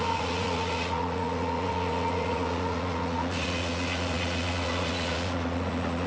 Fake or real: fake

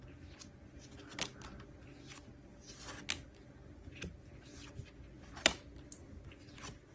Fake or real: real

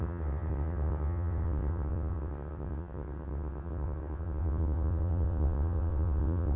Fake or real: fake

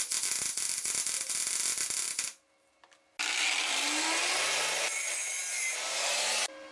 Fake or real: real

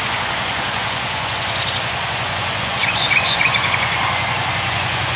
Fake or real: fake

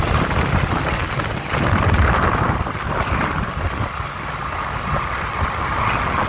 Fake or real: real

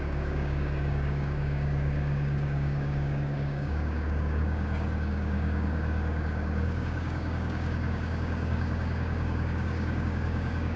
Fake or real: fake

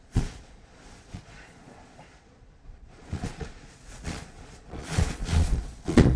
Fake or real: fake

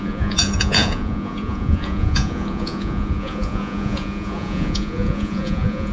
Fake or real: fake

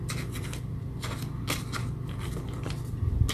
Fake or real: real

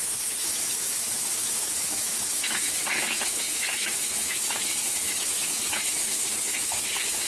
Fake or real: fake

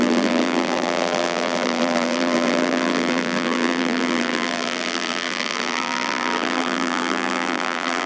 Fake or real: fake